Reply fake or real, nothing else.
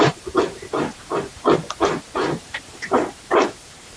fake